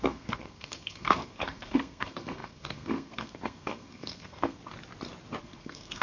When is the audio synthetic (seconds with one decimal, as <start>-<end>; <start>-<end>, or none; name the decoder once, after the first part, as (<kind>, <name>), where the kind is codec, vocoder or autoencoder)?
0.0-4.6 (codec, SNAC); 5.4-6.0